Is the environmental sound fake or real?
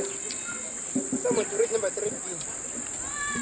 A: real